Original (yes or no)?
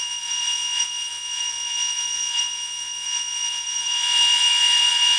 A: no